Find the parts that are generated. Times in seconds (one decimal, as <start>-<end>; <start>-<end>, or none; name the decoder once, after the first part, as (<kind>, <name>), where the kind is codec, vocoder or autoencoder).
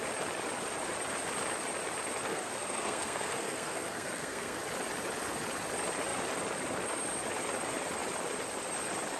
2.3-4.6 (codec, SNAC)